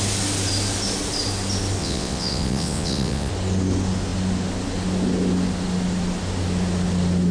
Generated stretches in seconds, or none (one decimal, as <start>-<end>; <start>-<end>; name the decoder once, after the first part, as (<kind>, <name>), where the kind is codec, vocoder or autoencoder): 1.8-3.3 (vocoder, WaveNeXt)